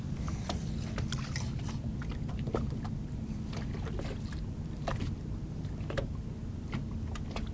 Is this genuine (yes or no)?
yes